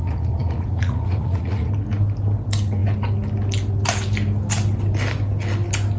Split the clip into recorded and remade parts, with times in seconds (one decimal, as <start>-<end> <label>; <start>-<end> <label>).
0.0-1.7 remade; 1.7-6.0 recorded